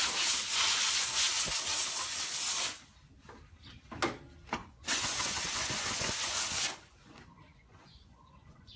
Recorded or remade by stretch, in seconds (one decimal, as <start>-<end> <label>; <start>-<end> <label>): 0.0-0.4 recorded; 0.4-1.3 remade; 1.3-4.6 recorded; 4.6-8.8 remade